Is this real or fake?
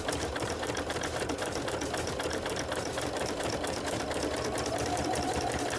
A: fake